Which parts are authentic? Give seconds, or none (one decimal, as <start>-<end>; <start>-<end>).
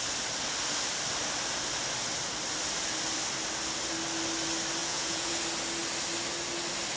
0.0-4.8; 5.3-7.0